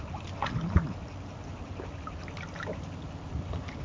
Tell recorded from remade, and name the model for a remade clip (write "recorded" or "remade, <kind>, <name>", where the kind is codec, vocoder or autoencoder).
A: recorded